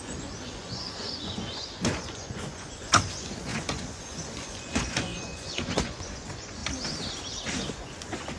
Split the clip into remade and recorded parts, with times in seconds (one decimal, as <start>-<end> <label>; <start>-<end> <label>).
0.0-6.6 remade; 6.6-7.7 recorded; 7.7-8.4 remade